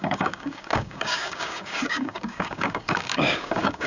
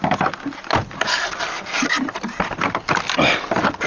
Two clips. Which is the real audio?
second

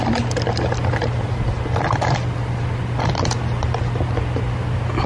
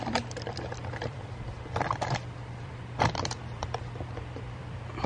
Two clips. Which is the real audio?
first